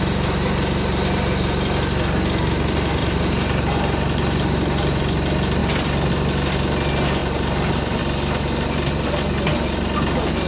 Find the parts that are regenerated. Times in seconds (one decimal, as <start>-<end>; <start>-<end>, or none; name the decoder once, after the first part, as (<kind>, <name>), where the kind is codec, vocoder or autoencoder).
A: 3.0-5.0 (vocoder, BigVGAN v2); 7.2-8.0